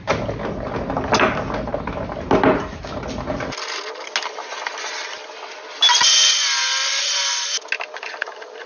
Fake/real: real